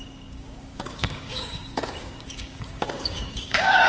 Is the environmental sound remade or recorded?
remade